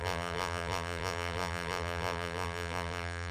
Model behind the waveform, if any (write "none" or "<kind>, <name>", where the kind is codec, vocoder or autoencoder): vocoder, BigVGAN v2